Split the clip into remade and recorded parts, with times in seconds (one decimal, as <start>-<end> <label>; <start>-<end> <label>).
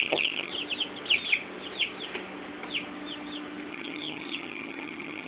0.0-0.5 remade; 0.5-3.7 recorded; 3.7-5.3 remade